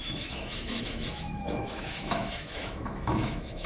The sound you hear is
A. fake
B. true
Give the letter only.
A